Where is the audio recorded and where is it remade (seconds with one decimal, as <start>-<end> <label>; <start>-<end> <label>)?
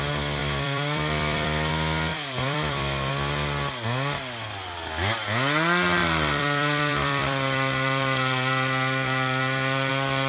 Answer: 0.0-0.4 recorded; 0.4-1.7 remade; 1.7-2.1 recorded; 2.1-3.1 remade; 3.1-6.0 recorded; 6.0-9.9 remade; 9.9-10.3 recorded